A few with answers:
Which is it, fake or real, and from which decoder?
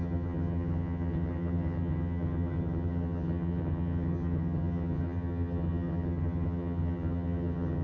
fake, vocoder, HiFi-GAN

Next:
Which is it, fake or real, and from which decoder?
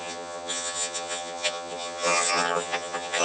fake, vocoder, HiFi-GAN